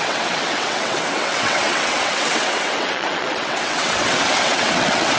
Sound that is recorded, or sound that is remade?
remade